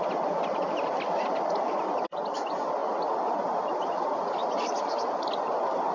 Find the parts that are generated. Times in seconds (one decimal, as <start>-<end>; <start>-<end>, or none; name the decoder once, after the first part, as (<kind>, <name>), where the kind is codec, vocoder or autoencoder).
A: 0.0-2.8 (vocoder, BigVGAN v2); 3.4-4.4; 5.2-5.9